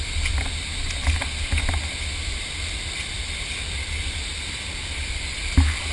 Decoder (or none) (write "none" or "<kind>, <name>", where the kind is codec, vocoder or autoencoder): none